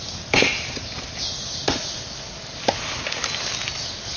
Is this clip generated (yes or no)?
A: no